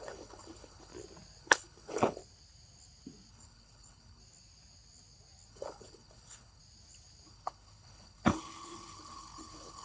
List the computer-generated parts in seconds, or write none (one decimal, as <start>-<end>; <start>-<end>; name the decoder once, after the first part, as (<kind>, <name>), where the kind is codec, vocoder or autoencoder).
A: 0.0-0.9 (codec, HILCodec); 1.4-2.2; 3.3-4.2; 5.5-6.6; 7.3-9.8